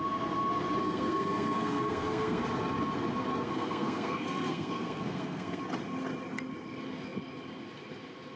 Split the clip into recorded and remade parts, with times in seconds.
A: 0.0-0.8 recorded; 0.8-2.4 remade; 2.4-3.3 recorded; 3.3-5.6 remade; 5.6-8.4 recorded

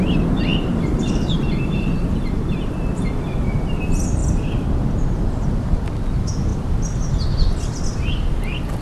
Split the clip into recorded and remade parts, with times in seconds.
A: 0.0-0.5 recorded; 0.5-1.9 remade; 1.9-8.8 recorded

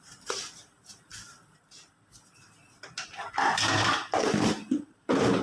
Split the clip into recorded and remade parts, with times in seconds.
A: 0.0-1.1 remade; 1.1-4.3 recorded; 4.3-5.4 remade

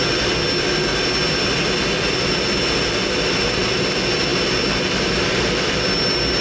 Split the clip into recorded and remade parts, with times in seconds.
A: 0.0-6.4 recorded